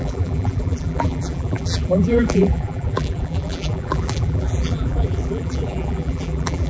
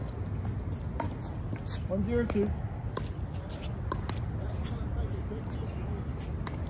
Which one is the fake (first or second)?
first